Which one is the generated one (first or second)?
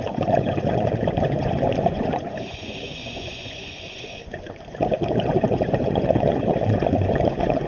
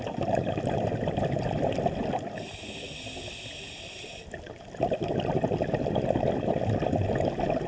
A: first